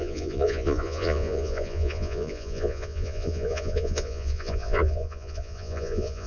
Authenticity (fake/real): fake